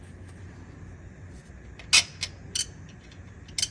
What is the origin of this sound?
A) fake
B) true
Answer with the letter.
B